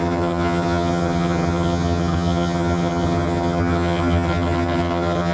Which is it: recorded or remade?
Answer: remade